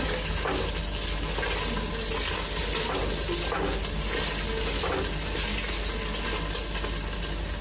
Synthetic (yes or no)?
no